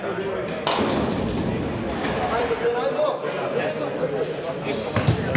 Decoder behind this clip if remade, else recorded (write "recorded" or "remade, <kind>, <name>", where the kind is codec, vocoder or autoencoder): recorded